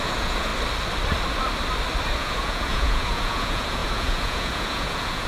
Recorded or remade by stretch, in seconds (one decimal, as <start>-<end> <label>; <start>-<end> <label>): 0.0-0.5 remade; 0.5-2.2 recorded; 2.2-5.3 remade